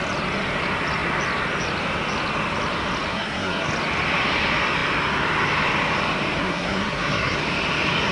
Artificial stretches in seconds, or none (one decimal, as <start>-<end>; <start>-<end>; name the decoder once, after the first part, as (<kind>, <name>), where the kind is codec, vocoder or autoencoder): 3.1-3.7 (codec, SNAC); 6.4-7.4